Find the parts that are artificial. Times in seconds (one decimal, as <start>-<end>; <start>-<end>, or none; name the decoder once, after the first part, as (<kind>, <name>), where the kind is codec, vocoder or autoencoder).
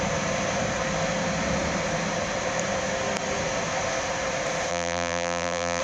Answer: 4.7-5.8 (vocoder, BigVGAN v2)